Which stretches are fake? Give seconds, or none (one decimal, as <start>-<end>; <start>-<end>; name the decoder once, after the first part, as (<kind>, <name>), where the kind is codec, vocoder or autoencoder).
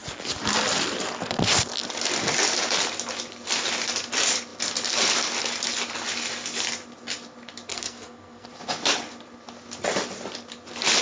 7.7-8.5 (codec, SNAC)